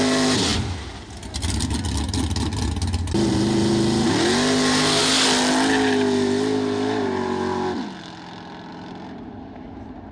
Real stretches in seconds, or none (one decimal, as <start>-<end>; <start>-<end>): 0.0-10.1